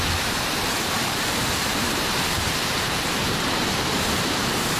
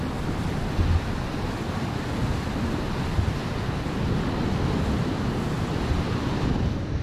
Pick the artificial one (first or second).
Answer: first